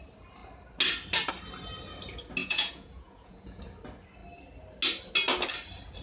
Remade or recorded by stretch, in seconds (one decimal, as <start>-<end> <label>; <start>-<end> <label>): 0.0-2.4 recorded; 2.4-3.6 remade; 3.6-6.0 recorded